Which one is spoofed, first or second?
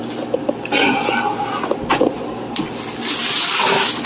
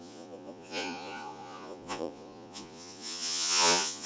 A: second